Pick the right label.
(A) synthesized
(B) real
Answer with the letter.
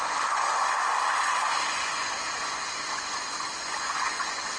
A